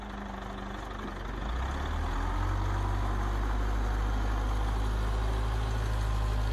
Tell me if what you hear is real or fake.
real